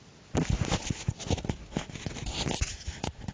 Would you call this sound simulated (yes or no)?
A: no